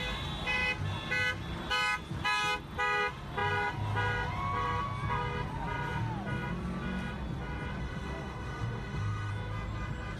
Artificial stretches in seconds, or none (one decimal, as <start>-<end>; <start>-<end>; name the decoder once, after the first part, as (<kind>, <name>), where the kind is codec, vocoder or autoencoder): 7.8-9.3 (autoencoder, DAC-VAE)